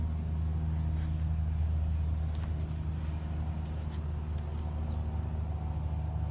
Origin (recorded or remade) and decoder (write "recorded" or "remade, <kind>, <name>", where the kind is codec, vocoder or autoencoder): recorded